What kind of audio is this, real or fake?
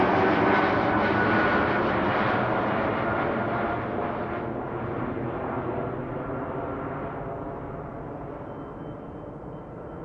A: real